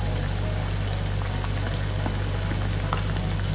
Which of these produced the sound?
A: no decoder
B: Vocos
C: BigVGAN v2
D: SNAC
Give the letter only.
A